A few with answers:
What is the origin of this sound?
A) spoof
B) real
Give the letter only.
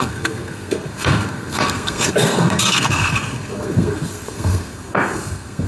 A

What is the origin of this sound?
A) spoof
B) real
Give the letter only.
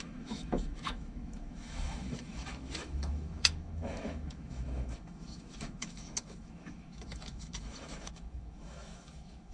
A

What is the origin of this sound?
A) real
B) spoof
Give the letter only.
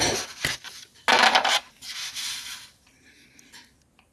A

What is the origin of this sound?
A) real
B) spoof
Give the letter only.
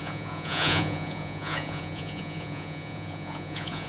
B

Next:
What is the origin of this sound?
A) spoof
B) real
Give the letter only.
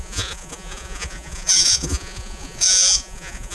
A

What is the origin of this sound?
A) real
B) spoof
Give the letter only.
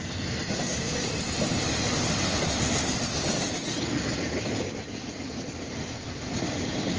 A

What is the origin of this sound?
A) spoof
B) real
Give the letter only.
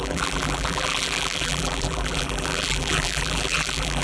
A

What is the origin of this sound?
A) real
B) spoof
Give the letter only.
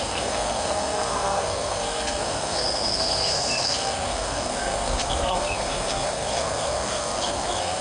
B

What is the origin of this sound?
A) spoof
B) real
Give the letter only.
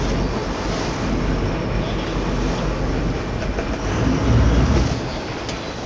B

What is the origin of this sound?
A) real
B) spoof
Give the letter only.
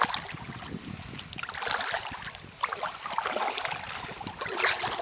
A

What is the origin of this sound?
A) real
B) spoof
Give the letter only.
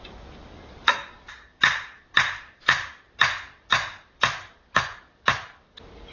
A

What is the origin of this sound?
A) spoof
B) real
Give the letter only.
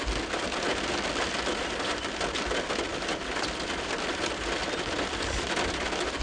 B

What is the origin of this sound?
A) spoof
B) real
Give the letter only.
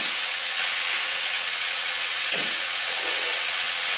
A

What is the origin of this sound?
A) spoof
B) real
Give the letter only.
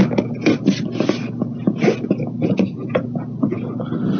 B